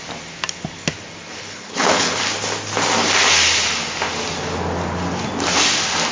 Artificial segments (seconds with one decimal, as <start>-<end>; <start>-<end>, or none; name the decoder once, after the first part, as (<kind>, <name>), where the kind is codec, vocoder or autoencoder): 1.4-2.2 (codec, HILCodec)